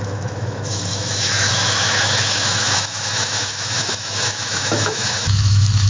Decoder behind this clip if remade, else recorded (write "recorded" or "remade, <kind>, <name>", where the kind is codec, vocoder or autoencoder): remade, autoencoder, DAC-VAE